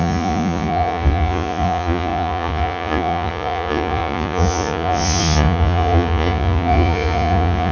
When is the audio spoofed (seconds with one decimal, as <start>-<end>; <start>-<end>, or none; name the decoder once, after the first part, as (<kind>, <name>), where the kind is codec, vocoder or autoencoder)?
0.0-7.7 (vocoder, Vocos)

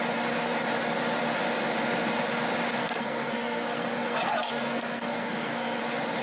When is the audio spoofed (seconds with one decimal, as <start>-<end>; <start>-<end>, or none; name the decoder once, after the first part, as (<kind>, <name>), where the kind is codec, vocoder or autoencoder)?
2.8-5.8 (codec, SNAC)